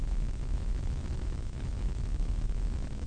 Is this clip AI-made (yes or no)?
yes